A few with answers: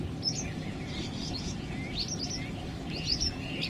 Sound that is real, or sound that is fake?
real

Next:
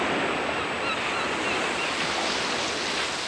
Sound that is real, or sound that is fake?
real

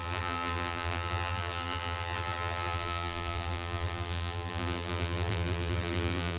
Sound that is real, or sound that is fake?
fake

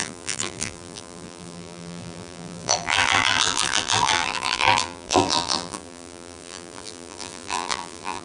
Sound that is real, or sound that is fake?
fake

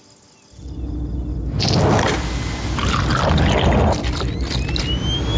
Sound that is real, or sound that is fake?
real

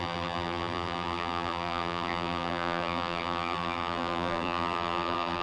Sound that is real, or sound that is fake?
fake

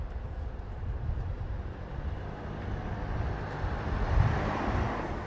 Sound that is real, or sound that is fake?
real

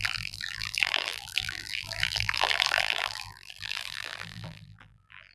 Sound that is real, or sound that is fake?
fake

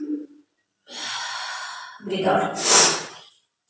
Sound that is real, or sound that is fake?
real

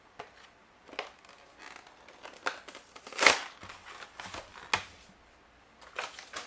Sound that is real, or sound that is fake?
real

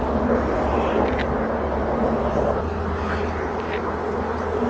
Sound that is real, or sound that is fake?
real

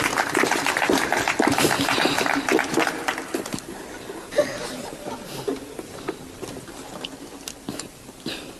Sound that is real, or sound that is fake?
fake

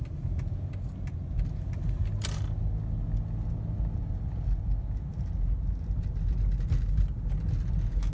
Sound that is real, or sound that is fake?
real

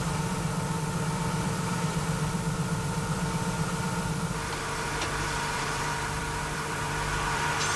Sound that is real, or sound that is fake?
fake